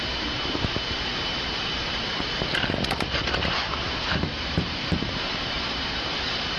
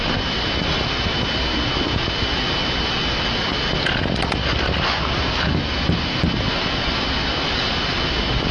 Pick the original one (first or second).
second